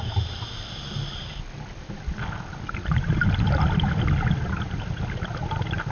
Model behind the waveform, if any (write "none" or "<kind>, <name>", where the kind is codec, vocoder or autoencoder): none